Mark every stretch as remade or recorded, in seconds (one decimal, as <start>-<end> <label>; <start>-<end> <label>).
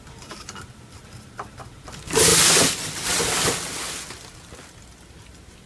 0.0-5.7 recorded